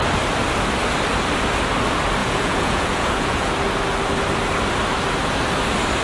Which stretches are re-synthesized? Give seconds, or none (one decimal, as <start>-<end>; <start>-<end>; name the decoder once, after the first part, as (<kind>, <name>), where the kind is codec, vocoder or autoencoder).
2.2-3.5 (vocoder, Vocos)